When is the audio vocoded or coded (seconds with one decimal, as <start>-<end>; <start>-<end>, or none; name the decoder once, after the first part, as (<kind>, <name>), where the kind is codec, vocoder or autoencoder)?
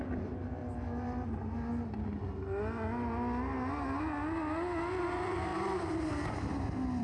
0.0-0.6 (vocoder, BigVGAN v2); 4.8-7.0